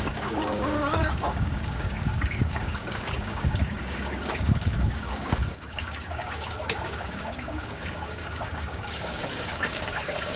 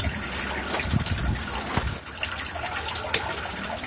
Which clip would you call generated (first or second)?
first